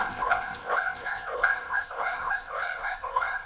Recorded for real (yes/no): no